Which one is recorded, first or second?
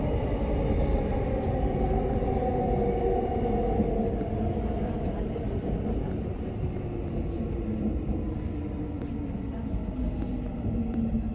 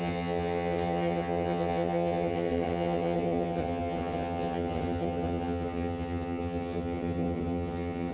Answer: first